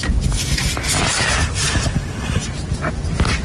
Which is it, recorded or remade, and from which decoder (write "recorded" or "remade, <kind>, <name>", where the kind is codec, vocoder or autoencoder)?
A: recorded